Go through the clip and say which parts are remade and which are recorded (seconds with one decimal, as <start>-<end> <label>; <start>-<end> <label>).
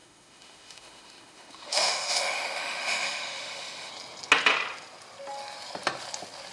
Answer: 0.0-3.9 remade; 3.9-6.5 recorded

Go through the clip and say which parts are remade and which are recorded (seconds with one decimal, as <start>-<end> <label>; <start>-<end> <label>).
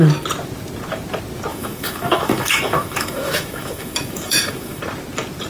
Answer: 0.0-1.5 recorded; 1.5-4.8 remade; 4.8-5.5 recorded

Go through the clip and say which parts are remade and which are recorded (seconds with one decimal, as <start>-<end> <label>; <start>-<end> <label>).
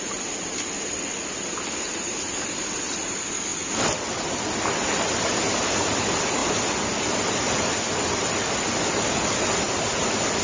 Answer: 0.0-10.4 recorded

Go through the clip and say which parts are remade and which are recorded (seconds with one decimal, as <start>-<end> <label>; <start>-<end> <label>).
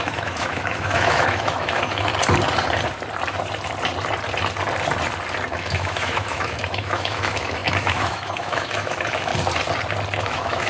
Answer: 0.0-2.1 remade; 2.1-5.5 recorded; 5.5-9.3 remade; 9.3-10.2 recorded; 10.2-10.7 remade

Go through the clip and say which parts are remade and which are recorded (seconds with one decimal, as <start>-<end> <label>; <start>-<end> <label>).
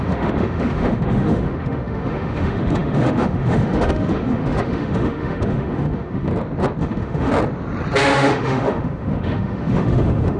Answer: 0.0-6.3 remade; 6.3-6.8 recorded; 6.8-7.3 remade; 7.3-8.0 recorded; 8.0-10.4 remade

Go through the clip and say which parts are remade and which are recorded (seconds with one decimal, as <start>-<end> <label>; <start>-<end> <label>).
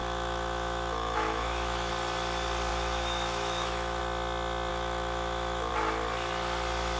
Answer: 0.0-1.9 remade; 1.9-2.7 recorded; 2.7-4.0 remade; 4.0-4.7 recorded; 4.7-5.7 remade; 5.7-7.0 recorded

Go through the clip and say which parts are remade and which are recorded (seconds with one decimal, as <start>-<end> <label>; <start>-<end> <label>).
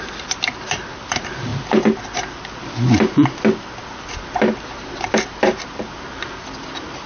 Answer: 0.0-7.1 recorded